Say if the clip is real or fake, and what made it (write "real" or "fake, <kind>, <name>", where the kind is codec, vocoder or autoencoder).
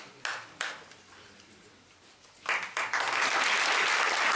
real